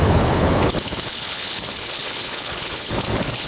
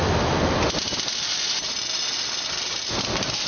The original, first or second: second